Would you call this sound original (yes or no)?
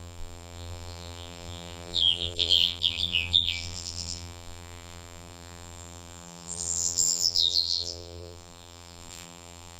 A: no